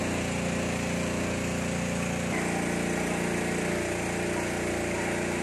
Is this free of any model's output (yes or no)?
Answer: yes